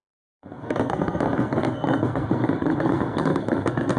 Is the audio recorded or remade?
remade